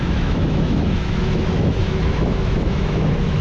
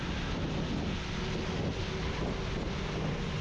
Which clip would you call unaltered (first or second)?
second